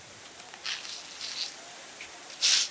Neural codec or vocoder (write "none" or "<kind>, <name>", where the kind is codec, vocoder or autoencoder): none